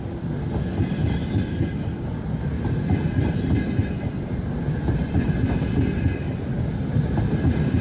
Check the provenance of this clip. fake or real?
real